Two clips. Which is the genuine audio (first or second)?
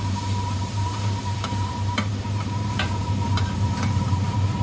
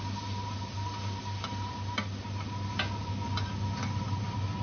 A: second